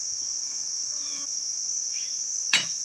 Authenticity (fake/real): fake